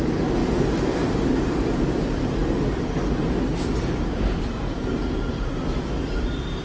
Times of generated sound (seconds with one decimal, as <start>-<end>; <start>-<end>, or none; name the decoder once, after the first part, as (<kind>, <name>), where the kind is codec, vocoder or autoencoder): none